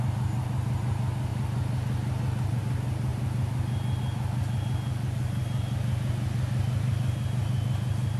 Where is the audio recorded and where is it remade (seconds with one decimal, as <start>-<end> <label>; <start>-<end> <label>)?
0.0-8.2 recorded